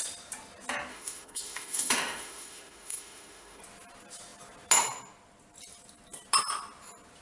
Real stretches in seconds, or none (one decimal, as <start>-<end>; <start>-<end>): 0.0-0.9; 3.6-7.2